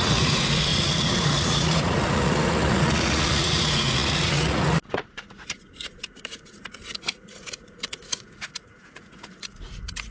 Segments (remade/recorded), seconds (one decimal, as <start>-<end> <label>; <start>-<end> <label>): 0.0-10.1 remade